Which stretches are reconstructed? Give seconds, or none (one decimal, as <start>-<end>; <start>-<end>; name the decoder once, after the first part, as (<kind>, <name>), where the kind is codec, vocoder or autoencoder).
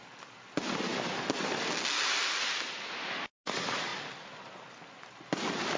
none